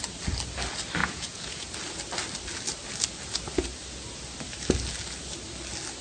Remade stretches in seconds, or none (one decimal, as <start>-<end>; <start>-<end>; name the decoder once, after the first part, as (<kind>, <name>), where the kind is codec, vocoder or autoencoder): 1.0-1.7 (vocoder, Vocos)